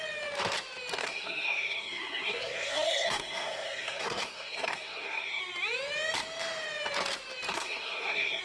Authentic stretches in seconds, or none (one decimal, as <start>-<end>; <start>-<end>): 0.0-1.0; 5.4-7.5